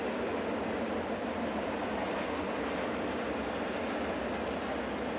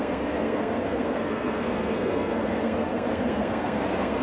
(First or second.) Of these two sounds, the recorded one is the first